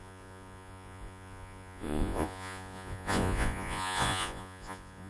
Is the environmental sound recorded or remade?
remade